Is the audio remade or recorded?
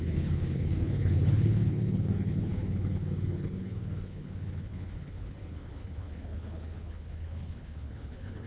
remade